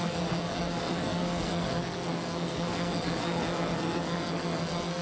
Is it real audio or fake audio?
fake